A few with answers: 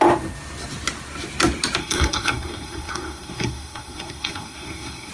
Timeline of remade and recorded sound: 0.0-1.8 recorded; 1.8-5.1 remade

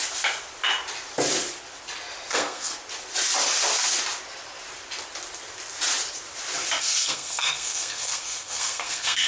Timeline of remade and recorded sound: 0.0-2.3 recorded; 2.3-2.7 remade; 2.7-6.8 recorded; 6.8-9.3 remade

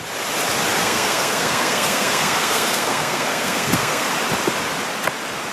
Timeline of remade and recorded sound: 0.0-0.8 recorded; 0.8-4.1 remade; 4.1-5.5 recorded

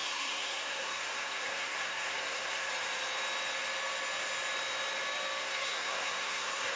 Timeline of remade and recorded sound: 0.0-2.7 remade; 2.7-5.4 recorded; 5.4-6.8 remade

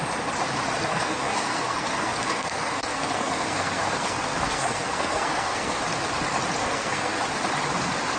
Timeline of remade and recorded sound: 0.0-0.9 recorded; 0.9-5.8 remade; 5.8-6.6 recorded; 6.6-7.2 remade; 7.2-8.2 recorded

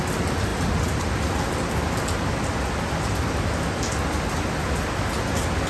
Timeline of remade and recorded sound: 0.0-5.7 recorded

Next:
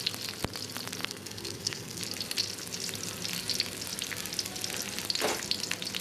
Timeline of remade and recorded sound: 0.0-1.0 recorded; 1.0-2.0 remade; 2.0-6.0 recorded